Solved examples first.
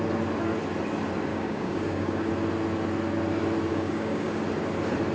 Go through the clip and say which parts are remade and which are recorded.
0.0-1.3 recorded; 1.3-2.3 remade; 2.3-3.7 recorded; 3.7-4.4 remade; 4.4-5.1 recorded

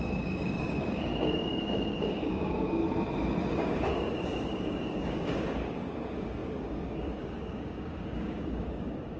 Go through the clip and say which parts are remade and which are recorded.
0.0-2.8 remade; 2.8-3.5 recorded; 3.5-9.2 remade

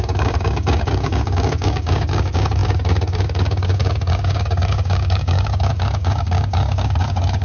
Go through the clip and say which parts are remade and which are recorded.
0.0-7.4 remade

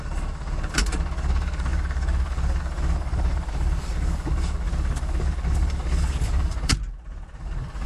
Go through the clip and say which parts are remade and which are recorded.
0.0-6.7 remade; 6.7-7.4 recorded; 7.4-7.9 remade

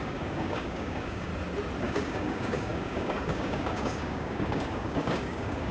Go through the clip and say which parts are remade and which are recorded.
0.0-1.3 remade; 1.3-1.8 recorded; 1.8-5.7 remade

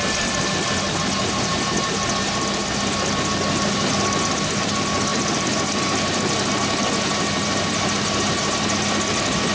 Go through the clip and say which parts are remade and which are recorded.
0.0-9.5 recorded

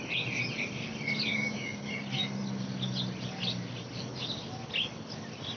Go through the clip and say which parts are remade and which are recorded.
0.0-1.3 recorded; 1.3-1.9 remade; 1.9-5.6 recorded

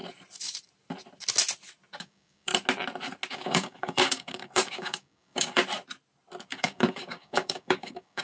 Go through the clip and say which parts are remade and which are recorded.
0.0-2.0 recorded; 2.0-2.5 remade; 2.5-3.3 recorded; 3.3-5.6 remade; 5.6-6.5 recorded; 6.5-8.2 remade